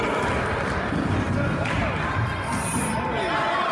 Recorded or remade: recorded